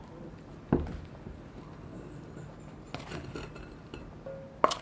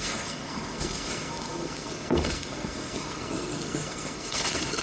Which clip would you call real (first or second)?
first